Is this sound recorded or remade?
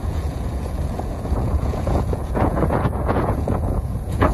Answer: remade